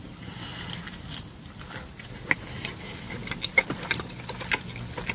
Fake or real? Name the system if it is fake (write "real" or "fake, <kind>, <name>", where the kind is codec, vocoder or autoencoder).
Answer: real